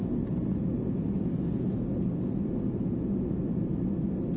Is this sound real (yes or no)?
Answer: yes